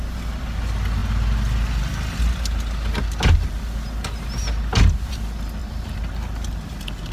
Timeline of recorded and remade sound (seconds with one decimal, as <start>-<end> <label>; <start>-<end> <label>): 0.0-5.6 recorded; 5.6-6.1 remade; 6.1-7.1 recorded